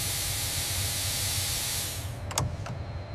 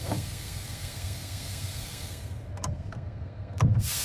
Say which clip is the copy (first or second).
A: second